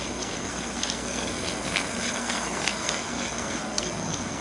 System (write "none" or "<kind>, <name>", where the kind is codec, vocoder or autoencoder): codec, SNAC